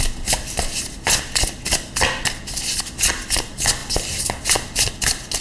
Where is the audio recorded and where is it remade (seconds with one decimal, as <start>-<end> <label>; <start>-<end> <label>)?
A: 0.0-5.4 recorded